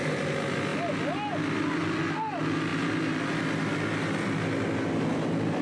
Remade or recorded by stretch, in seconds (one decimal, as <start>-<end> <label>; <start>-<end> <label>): 0.0-5.6 recorded